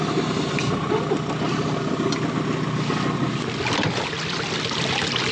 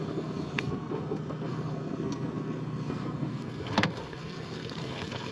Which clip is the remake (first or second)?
second